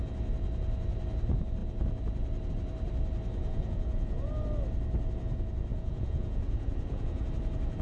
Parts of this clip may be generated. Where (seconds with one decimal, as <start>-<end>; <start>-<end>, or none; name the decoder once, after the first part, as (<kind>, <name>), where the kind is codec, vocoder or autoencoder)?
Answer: 3.4-4.3 (vocoder, Vocos); 5.7-7.3